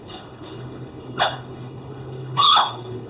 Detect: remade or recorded remade